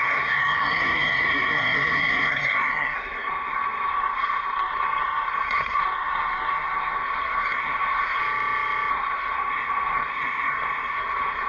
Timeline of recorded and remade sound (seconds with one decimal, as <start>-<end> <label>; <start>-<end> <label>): 0.0-8.2 remade; 8.2-8.9 recorded; 8.9-11.5 remade

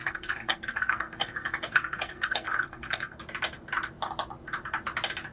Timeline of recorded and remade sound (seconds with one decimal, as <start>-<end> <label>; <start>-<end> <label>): 0.0-3.2 remade; 3.2-5.3 recorded

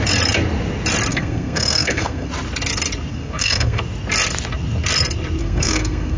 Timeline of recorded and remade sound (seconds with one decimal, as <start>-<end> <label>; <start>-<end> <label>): 0.0-1.1 recorded; 1.1-2.3 remade; 2.3-3.1 recorded; 3.1-3.8 remade; 3.8-5.4 recorded; 5.4-6.2 remade